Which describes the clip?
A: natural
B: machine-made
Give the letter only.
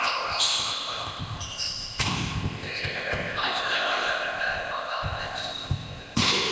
B